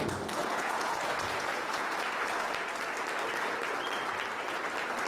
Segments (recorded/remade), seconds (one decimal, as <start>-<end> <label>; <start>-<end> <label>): 0.0-0.4 recorded; 0.4-1.9 remade; 1.9-5.1 recorded